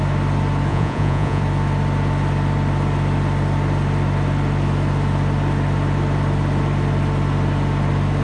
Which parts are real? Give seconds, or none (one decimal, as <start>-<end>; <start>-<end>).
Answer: 0.0-0.7; 1.4-8.2